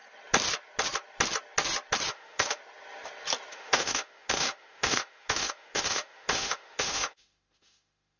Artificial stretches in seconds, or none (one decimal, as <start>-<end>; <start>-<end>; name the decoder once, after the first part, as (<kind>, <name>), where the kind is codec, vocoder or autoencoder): 2.1-2.6 (autoencoder, DAC-VAE); 3.5-8.2